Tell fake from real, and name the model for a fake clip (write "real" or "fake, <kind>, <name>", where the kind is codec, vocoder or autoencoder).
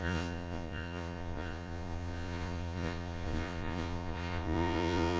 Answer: fake, vocoder, Vocos